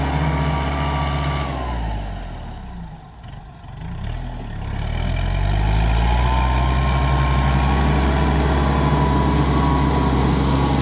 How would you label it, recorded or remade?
recorded